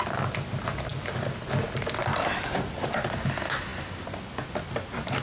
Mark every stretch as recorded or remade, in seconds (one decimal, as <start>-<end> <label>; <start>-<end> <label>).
0.0-5.2 recorded